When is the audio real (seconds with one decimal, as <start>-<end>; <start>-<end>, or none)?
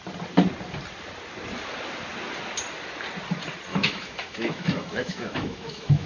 0.0-3.7